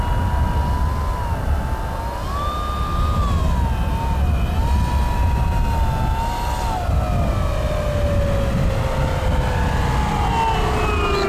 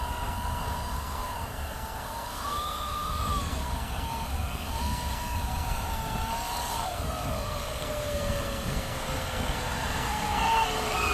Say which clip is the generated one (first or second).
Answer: second